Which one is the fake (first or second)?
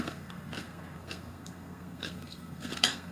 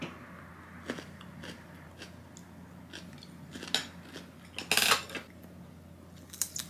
first